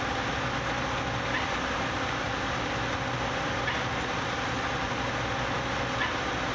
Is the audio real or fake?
real